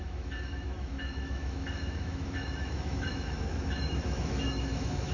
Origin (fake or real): fake